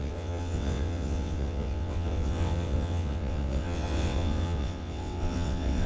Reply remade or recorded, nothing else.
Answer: remade